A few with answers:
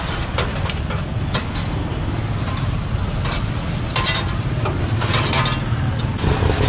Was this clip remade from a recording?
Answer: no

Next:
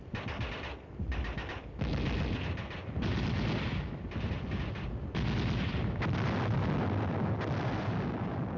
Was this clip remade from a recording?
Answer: no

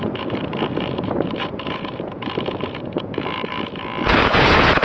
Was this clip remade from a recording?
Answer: yes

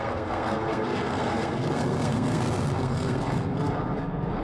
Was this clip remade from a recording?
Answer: yes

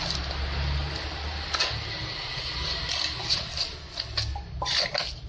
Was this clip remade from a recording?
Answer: no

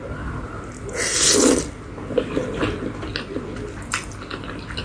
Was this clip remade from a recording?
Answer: no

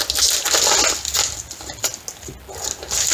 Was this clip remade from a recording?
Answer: no